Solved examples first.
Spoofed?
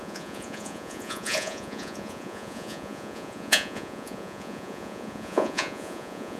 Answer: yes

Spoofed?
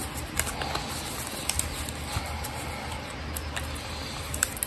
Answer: no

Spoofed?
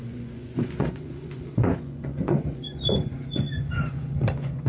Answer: yes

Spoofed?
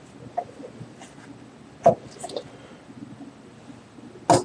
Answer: no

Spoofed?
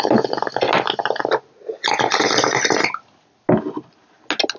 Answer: no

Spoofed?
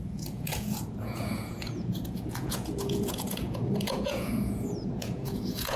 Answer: yes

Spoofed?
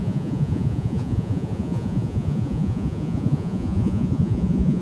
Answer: yes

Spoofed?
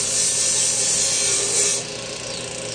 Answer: no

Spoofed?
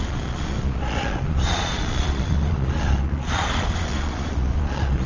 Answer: yes